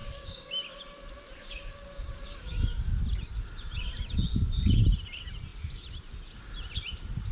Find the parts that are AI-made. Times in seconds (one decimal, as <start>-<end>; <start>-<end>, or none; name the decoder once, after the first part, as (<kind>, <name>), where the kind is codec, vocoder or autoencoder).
0.0-0.5 (codec, DAC); 1.4-3.0